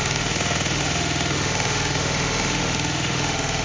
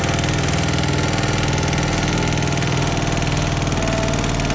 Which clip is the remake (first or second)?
first